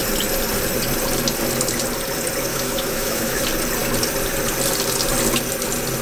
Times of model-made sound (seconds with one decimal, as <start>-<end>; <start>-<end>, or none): 2.5-3.4